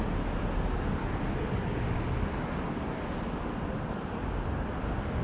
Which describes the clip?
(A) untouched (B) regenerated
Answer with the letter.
A